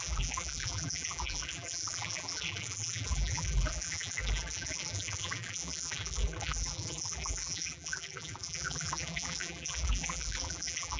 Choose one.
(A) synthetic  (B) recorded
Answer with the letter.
A